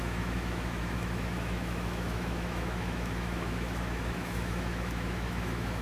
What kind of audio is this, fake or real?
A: fake